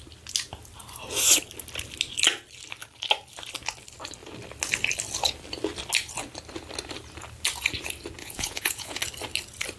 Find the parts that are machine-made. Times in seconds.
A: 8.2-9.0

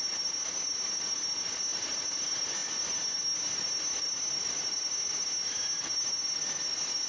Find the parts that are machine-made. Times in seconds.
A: 1.7-2.2

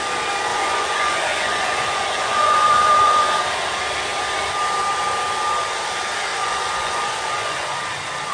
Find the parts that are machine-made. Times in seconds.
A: 0.5-3.4; 6.3-7.8

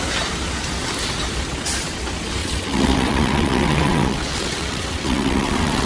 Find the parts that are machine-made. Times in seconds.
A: 2.4-5.9

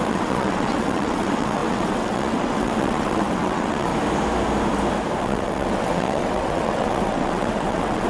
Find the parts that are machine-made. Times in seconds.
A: 0.0-3.9; 5.2-8.1

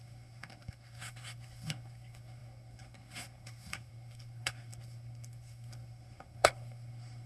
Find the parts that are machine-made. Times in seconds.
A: 0.0-7.3

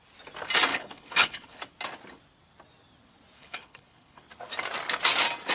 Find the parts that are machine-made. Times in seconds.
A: 0.7-1.6; 3.4-4.2

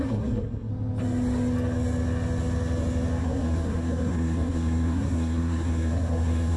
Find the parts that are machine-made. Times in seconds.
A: 0.0-0.7; 3.2-6.6